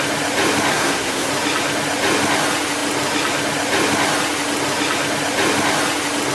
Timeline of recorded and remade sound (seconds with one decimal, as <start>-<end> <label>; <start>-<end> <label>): 0.0-0.7 recorded; 0.7-1.3 remade; 1.3-6.3 recorded